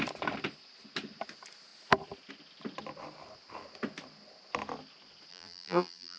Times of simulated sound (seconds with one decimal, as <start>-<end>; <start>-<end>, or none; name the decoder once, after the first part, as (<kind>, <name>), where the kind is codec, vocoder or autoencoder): 5.3-6.2 (vocoder, BigVGAN v2)